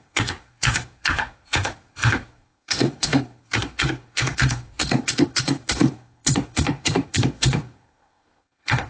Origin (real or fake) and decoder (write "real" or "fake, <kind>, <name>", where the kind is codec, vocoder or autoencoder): fake, codec, SNAC